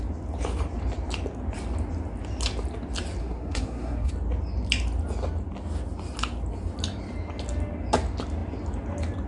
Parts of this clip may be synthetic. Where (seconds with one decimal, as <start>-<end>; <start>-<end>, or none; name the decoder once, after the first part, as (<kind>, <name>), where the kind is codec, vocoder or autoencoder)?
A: 3.2-4.1 (codec, SNAC)